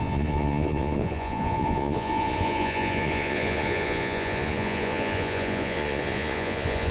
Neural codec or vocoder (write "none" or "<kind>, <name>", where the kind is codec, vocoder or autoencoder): vocoder, Vocos